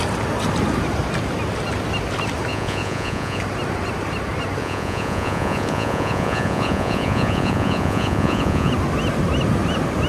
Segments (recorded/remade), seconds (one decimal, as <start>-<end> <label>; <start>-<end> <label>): 0.0-2.5 recorded; 2.5-3.4 remade; 3.4-4.6 recorded; 4.6-8.7 remade; 8.7-10.1 recorded